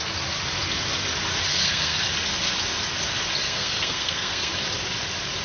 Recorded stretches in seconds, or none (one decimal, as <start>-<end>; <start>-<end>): 0.0-1.5; 2.1-3.4; 4.5-5.4